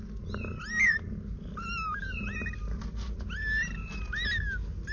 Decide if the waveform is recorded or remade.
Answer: recorded